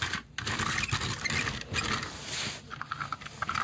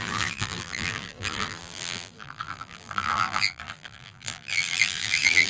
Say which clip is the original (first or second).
first